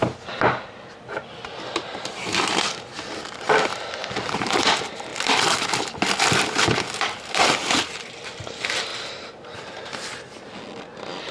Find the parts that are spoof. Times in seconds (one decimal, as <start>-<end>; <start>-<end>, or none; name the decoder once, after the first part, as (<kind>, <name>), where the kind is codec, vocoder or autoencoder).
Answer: 7.6-8.3 (vocoder, BigVGAN v2); 8.9-10.2